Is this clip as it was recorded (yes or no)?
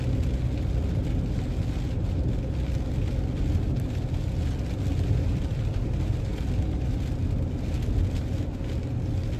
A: yes